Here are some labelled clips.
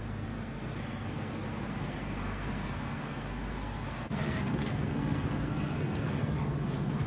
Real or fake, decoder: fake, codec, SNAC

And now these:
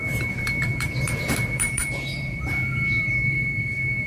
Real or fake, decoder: fake, vocoder, BigVGAN v2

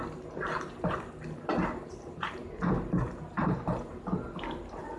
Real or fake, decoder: real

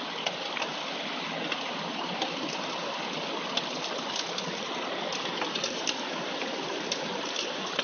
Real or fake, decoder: real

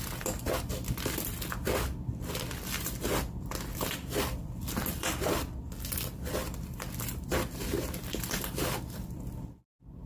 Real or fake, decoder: fake, vocoder, BigVGAN v2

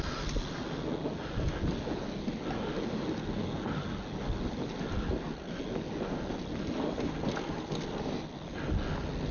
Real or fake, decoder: real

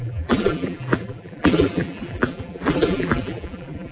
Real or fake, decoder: fake, vocoder, BigVGAN v2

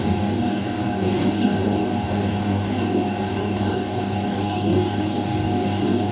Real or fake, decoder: fake, codec, DAC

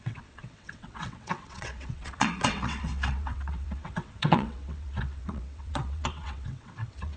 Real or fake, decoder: fake, vocoder, WaveNeXt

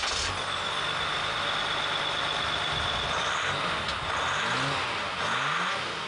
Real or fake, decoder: real